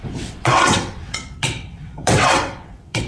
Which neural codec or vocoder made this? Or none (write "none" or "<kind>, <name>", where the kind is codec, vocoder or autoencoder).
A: vocoder, WaveNeXt